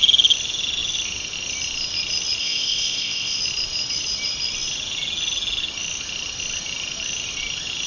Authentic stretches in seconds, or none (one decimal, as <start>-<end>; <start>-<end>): 0.0-2.4; 3.4-7.9